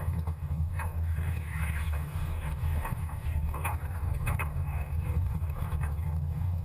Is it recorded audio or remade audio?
remade